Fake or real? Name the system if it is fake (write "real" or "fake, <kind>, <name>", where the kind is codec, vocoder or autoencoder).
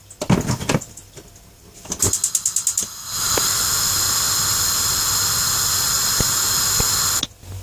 real